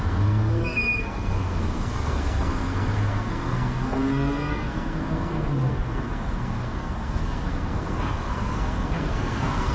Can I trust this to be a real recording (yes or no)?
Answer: no